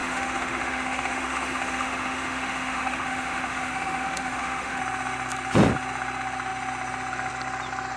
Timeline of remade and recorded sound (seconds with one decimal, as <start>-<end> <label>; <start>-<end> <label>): 0.0-4.8 remade; 4.8-8.0 recorded